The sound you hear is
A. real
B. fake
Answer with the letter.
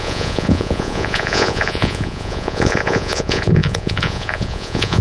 B